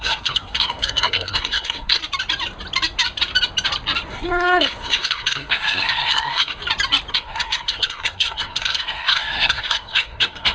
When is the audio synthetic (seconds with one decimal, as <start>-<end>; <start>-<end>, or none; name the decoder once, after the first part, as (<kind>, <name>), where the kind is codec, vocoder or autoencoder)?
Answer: 0.0-2.0 (codec, SNAC); 4.1-6.6; 7.1-10.5